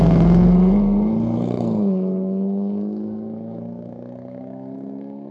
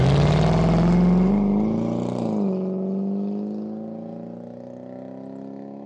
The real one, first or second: second